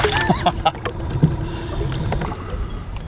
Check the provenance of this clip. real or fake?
real